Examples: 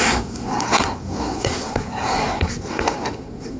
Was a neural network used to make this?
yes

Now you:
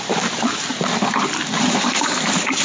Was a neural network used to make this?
no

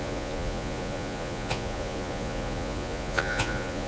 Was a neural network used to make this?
yes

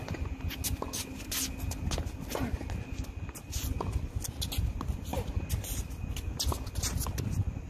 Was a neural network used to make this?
no